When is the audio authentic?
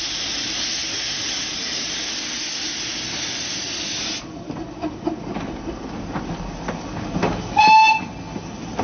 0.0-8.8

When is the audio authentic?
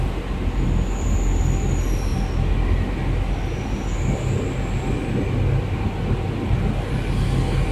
0.0-7.7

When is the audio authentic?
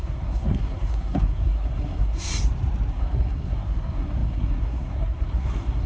2.3-2.9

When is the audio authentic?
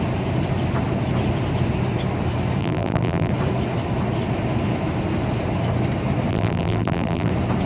0.0-2.6; 3.3-6.3; 7.3-7.7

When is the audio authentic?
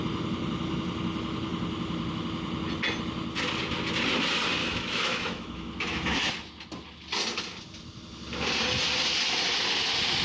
0.0-4.6; 6.3-10.2